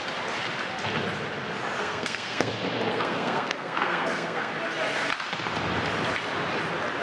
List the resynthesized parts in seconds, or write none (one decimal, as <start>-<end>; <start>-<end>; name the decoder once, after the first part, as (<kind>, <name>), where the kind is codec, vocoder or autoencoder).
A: 1.8-2.5 (codec, SNAC); 2.9-4.5